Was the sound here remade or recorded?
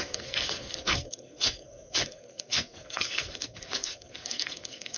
remade